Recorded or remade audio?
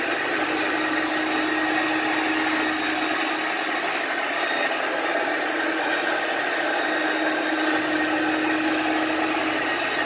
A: recorded